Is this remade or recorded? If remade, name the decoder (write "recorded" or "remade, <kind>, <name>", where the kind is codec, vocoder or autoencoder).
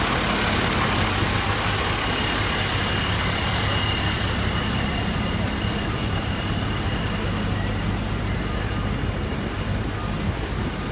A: recorded